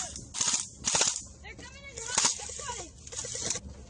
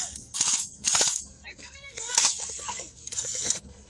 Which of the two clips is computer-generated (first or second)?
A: second